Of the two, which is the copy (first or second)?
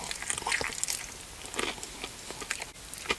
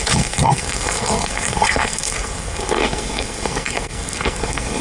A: second